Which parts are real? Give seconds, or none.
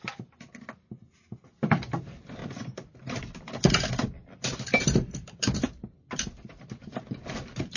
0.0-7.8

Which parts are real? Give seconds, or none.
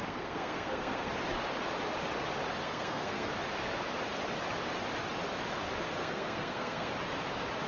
1.1-2.6; 3.3-6.0; 6.9-7.7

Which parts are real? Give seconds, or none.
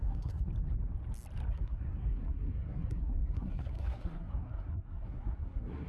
0.5-1.5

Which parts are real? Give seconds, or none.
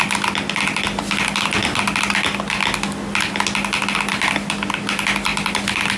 0.0-6.0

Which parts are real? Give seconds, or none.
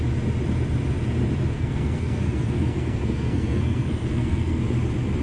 0.0-1.5; 4.6-5.2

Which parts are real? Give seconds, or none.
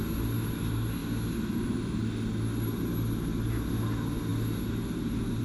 0.0-5.4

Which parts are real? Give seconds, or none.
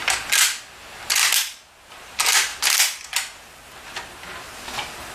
0.0-5.1